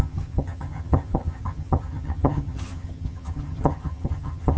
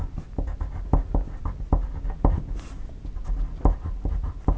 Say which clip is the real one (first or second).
second